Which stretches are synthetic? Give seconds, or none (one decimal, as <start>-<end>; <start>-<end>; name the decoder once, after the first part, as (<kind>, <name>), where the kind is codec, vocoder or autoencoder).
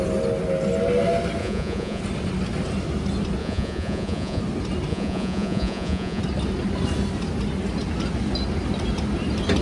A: 1.4-2.0 (vocoder, Vocos); 3.4-4.4; 4.9-6.2